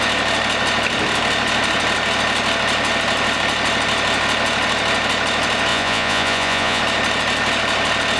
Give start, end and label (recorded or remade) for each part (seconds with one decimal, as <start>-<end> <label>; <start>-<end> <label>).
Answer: 0.0-5.7 recorded; 5.7-6.8 remade; 6.8-8.2 recorded